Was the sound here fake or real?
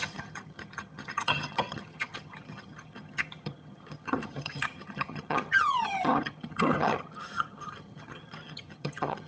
fake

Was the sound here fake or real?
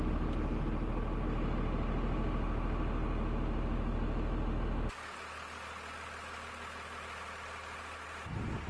real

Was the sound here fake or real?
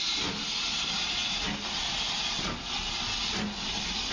real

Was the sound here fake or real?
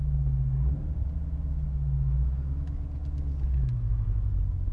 real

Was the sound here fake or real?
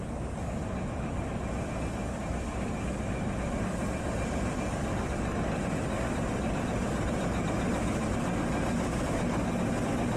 real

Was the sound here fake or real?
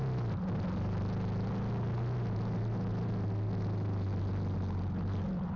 real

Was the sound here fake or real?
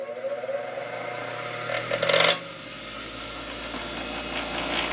real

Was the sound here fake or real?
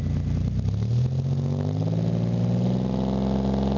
real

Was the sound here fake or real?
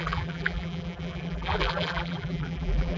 fake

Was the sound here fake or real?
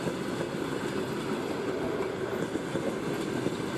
real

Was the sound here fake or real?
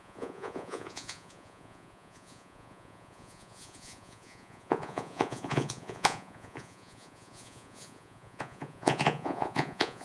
fake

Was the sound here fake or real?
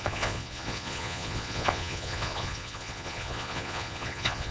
fake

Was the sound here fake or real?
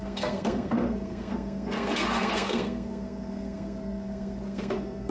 fake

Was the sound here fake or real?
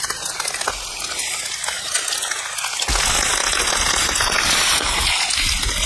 real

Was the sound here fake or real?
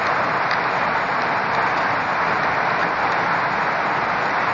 real